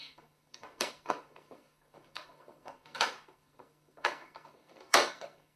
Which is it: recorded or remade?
remade